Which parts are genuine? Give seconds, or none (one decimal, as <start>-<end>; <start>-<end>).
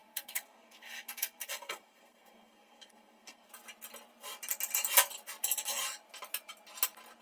3.5-7.2